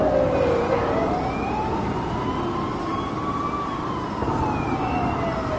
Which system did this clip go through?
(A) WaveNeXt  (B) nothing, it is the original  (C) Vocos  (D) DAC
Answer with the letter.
B